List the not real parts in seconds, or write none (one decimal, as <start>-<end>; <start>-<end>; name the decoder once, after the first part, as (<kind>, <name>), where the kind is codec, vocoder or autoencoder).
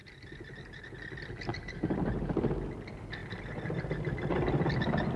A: none